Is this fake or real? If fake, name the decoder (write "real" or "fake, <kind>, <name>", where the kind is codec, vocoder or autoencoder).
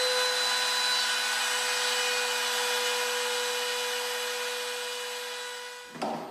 real